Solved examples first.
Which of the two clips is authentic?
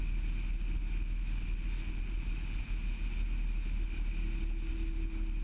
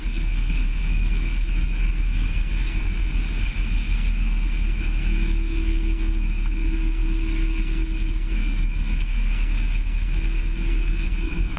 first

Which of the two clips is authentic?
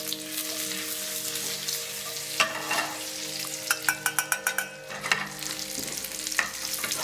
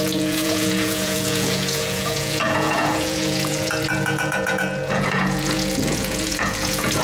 first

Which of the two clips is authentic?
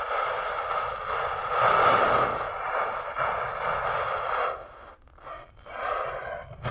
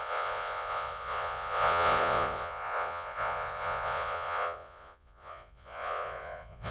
first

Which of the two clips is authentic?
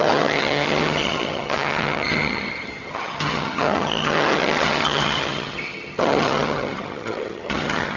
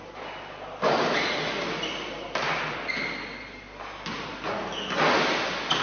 second